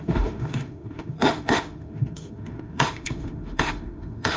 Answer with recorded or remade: remade